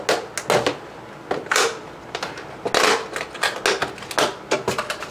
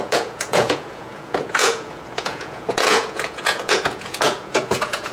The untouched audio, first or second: first